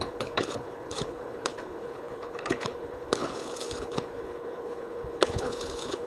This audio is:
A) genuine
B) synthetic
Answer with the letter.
B